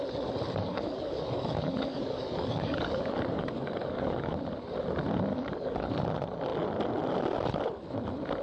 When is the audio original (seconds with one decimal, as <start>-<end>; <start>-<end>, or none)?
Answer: 0.0-0.7; 4.3-5.3; 5.9-8.4